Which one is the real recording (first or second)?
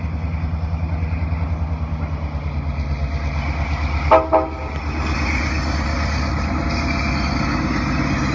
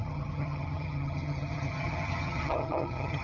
first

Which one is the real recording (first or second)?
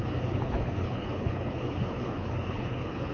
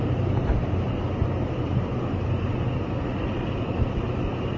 second